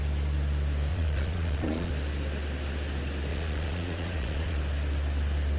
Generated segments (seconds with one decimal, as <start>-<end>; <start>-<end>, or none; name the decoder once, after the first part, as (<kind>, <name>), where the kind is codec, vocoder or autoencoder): 0.9-1.9 (vocoder, Vocos); 3.3-4.6